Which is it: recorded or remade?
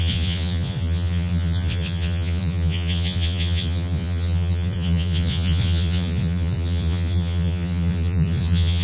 remade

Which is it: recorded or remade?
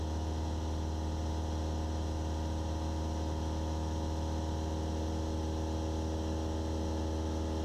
recorded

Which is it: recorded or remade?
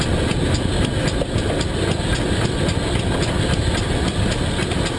recorded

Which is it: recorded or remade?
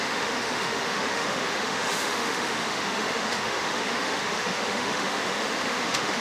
remade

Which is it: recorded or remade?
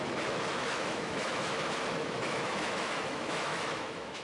remade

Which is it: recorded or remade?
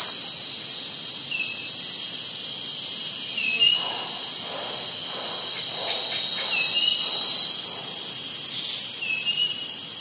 recorded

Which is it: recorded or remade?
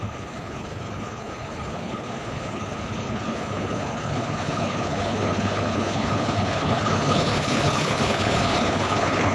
remade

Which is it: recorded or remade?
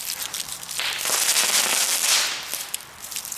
recorded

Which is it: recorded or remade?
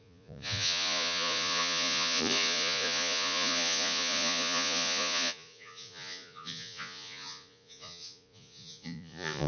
remade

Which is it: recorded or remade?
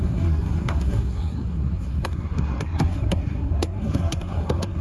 remade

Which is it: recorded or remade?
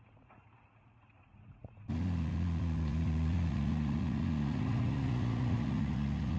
remade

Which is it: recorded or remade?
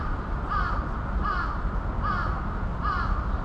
recorded